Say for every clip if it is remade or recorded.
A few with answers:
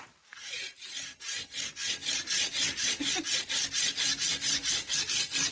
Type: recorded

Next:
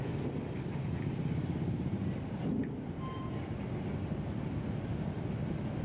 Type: recorded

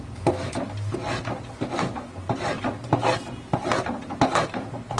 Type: recorded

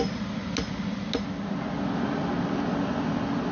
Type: recorded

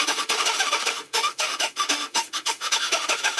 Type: remade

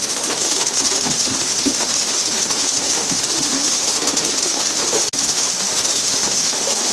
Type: remade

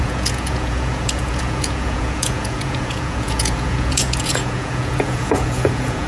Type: remade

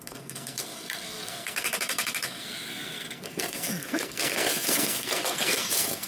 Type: remade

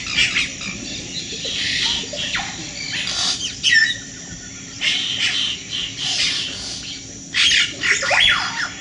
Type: recorded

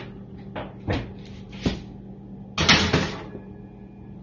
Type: recorded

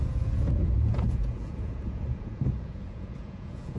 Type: remade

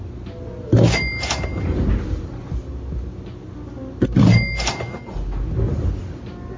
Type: recorded